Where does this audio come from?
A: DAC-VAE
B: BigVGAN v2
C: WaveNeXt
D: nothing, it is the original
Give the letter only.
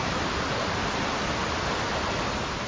D